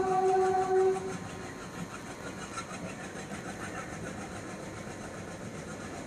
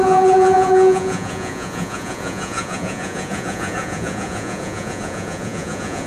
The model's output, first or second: second